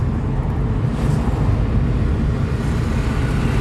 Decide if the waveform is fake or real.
real